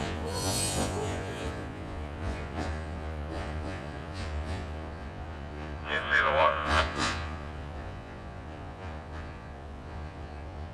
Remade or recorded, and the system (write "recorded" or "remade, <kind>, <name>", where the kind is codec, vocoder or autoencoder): remade, vocoder, Vocos